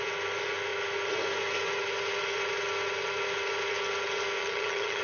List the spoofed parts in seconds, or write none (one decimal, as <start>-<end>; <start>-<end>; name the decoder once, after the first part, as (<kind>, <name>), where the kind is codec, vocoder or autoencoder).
4.4-5.0 (vocoder, HiFi-GAN)